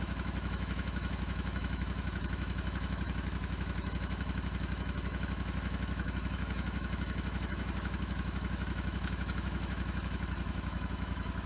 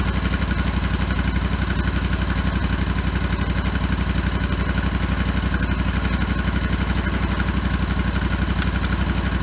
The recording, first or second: second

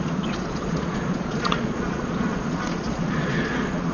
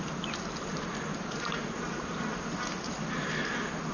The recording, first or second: second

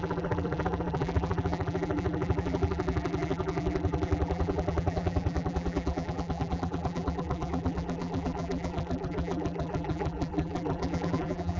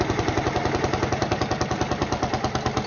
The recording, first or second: second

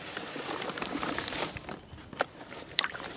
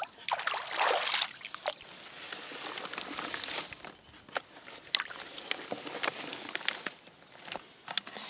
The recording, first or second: second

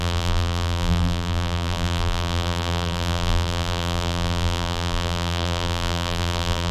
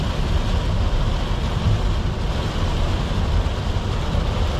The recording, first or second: second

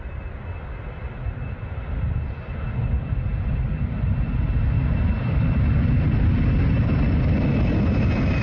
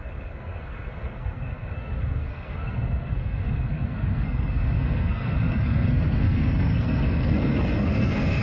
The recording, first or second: first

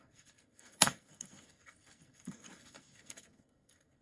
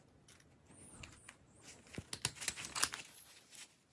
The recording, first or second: second